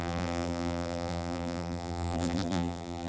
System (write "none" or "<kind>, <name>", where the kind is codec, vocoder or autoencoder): vocoder, BigVGAN v2